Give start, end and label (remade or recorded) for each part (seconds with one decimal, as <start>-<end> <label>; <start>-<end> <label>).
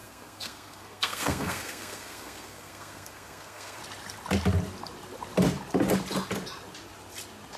0.0-3.8 remade; 3.8-7.6 recorded